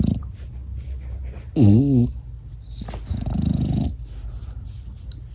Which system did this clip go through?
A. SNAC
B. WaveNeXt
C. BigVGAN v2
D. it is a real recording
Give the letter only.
D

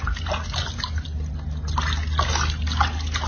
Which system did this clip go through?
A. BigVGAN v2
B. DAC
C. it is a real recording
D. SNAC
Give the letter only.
C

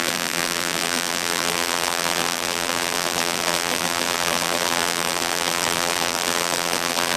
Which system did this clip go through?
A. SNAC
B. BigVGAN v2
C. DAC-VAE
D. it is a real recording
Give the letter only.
B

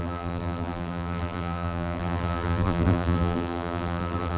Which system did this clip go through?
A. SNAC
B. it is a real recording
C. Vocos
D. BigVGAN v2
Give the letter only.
D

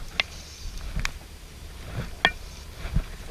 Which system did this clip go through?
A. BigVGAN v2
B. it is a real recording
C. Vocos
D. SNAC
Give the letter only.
B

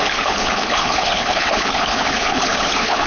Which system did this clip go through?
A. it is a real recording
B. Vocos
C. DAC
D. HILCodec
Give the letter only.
D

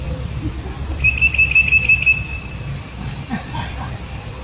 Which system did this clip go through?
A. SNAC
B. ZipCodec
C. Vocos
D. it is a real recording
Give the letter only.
D